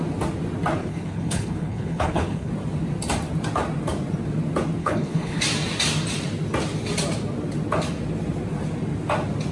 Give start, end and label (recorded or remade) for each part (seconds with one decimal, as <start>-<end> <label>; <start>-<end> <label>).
0.0-0.8 recorded; 0.8-2.5 remade; 2.5-4.8 recorded; 4.8-5.4 remade; 5.4-9.5 recorded